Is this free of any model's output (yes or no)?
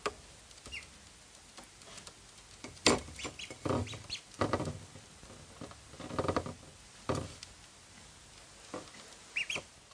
yes